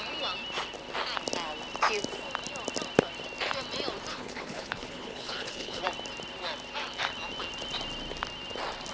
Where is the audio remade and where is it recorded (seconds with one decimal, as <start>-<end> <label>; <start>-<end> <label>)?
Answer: 0.0-4.1 recorded; 4.1-5.8 remade; 5.8-8.9 recorded